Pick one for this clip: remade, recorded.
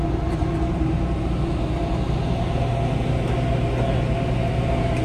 recorded